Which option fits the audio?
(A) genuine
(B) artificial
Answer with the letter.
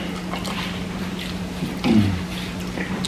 A